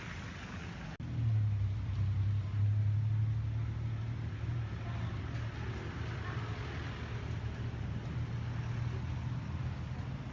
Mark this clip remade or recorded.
recorded